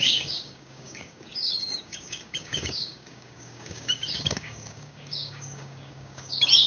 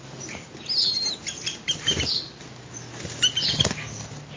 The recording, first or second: second